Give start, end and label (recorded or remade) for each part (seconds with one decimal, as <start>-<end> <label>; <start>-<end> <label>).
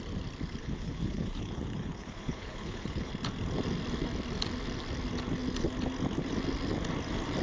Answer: 0.0-0.6 recorded; 0.6-3.1 remade; 3.1-7.4 recorded